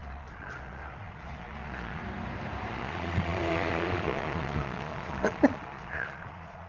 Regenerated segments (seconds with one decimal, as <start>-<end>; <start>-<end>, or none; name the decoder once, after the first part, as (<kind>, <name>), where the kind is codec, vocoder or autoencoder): 0.0-2.0 (vocoder, Vocos); 2.7-6.7